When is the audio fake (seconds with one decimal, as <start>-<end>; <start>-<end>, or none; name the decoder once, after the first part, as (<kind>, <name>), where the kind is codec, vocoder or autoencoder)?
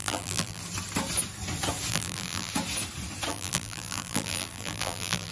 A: 0.0-0.6 (vocoder, BigVGAN v2); 1.9-2.5; 3.3-5.3